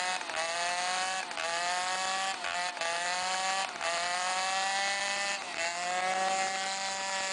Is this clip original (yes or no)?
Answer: yes